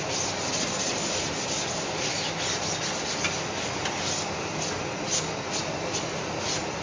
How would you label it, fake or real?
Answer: real